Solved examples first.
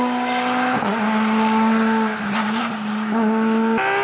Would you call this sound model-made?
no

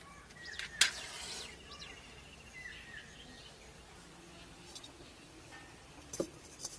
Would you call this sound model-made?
no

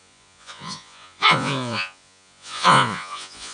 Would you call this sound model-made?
yes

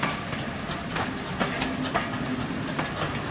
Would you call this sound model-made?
no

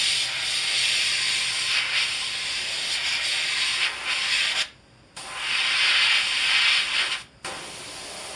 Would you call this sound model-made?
no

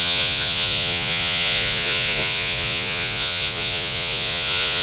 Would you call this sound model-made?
yes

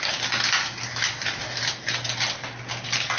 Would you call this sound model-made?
no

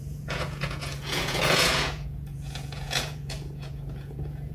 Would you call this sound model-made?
yes